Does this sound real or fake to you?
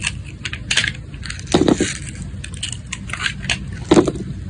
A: real